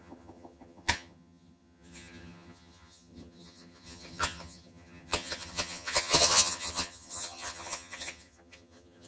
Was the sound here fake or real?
fake